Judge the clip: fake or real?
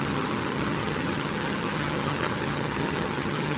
fake